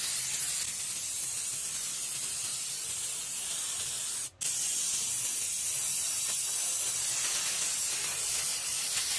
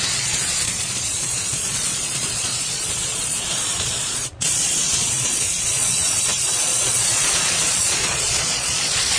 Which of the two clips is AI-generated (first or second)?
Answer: second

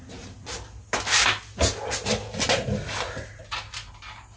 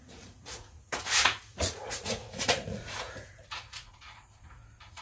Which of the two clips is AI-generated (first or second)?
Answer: second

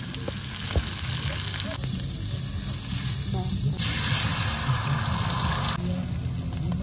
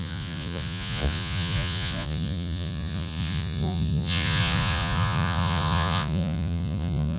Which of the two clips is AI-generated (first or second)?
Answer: second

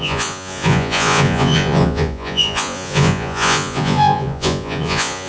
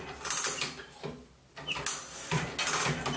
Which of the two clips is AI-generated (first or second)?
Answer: first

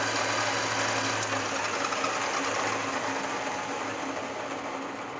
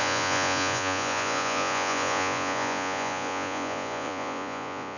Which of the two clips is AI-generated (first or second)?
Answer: second